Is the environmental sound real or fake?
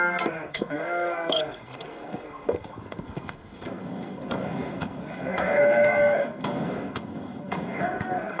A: fake